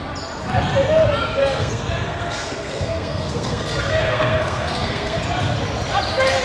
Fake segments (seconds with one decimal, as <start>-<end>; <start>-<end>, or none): 1.4-5.2